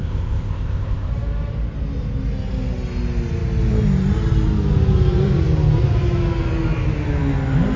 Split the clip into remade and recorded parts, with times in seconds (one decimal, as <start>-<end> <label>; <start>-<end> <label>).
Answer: 0.0-1.1 remade; 1.1-7.8 recorded